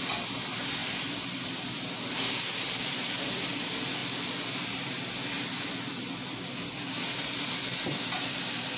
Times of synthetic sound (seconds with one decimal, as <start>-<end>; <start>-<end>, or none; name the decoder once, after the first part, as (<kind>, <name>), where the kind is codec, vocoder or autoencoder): 0.8-2.4 (vocoder, BigVGAN v2)